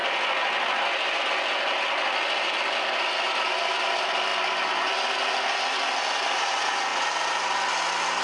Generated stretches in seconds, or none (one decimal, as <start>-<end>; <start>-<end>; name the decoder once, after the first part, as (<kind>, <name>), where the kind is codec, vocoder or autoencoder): none